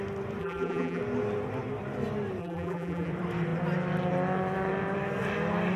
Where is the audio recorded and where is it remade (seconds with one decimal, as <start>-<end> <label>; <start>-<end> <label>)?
0.0-0.4 recorded; 0.4-1.0 remade; 1.0-2.4 recorded; 2.4-3.1 remade; 3.1-5.8 recorded